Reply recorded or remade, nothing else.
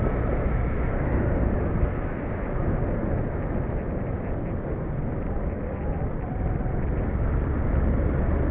recorded